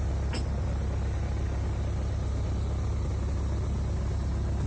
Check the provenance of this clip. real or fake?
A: real